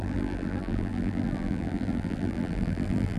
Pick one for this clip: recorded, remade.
remade